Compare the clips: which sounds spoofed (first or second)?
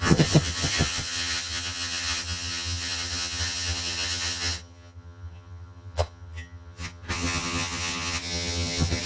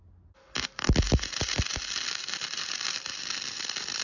first